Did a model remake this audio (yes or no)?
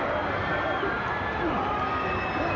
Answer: no